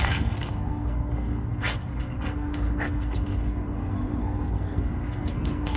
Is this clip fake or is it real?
fake